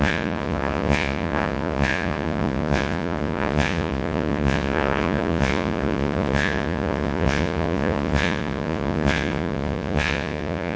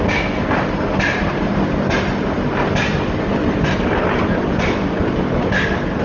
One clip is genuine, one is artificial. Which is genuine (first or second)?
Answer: second